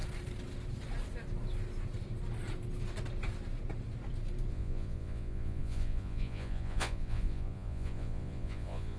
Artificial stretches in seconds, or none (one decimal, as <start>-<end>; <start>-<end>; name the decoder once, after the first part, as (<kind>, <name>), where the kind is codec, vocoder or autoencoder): 4.5-9.0 (vocoder, Vocos)